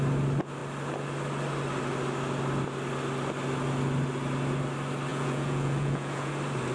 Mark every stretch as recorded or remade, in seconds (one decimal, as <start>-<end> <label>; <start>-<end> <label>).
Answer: 0.0-5.1 recorded; 5.1-6.3 remade; 6.3-6.7 recorded